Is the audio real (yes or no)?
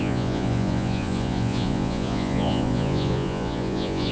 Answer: no